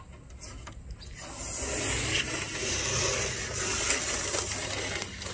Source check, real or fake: real